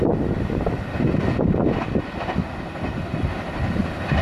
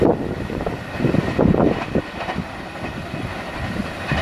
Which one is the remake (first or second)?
second